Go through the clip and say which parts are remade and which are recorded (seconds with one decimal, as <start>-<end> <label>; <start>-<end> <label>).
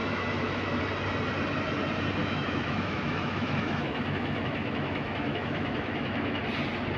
0.0-0.8 remade; 0.8-2.2 recorded; 2.2-6.4 remade; 6.4-7.0 recorded